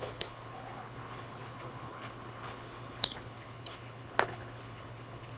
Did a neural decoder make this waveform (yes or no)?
yes